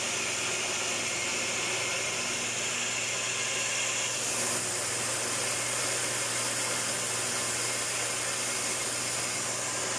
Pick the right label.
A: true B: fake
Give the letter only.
A